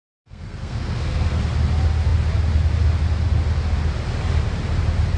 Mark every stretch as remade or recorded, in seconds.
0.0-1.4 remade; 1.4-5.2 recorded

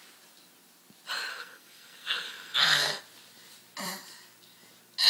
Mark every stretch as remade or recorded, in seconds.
0.0-1.3 recorded; 1.3-3.0 remade; 3.0-5.1 recorded

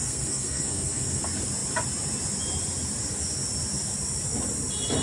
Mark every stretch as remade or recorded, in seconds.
0.0-1.2 remade; 1.2-5.0 recorded